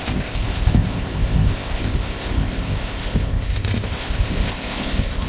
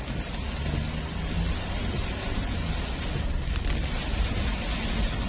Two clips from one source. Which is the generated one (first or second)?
first